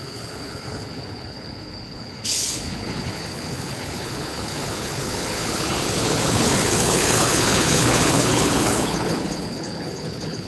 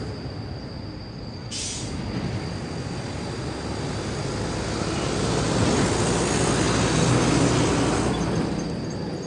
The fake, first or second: first